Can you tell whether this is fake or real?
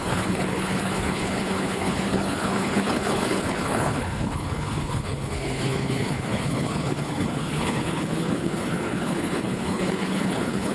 fake